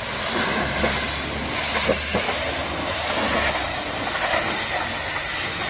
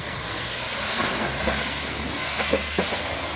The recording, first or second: first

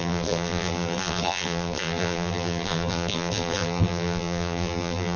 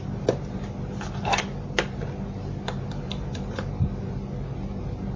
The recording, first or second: second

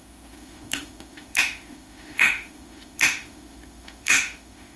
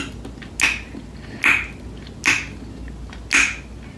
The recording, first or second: second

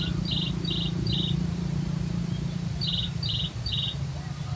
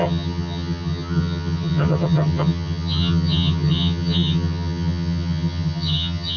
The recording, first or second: first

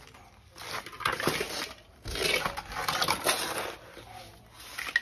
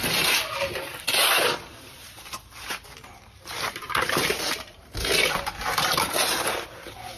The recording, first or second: first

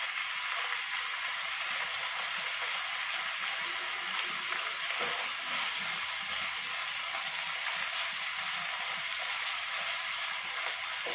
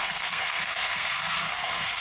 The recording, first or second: first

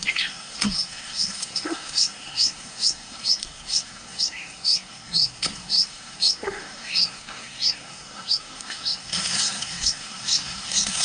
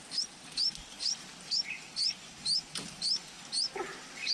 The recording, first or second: second